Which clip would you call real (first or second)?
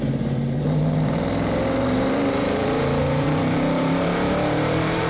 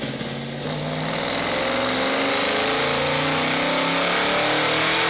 second